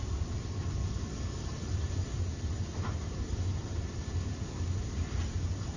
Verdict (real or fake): real